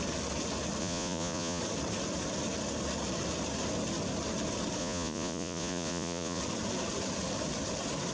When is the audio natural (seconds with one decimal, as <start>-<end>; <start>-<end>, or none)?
0.0-0.8; 1.6-4.8; 6.4-8.1